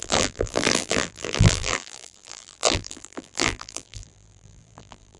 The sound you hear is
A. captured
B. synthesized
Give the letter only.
B